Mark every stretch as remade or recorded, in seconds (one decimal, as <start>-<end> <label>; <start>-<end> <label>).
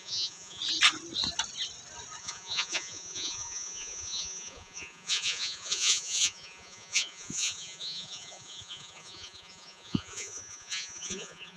0.0-0.6 remade; 0.6-2.2 recorded; 2.2-11.6 remade